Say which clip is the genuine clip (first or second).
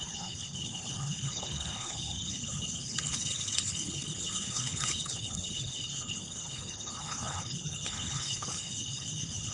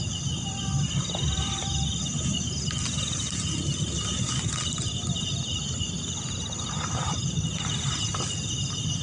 second